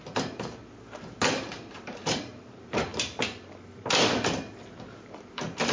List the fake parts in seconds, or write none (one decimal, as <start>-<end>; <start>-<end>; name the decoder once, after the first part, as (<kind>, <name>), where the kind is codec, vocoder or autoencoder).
0.0-0.6 (vocoder, BigVGAN v2); 1.5-2.9; 4.8-5.7